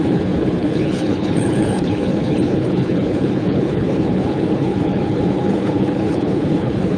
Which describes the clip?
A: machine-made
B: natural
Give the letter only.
A